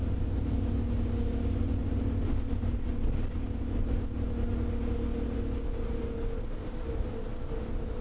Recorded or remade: recorded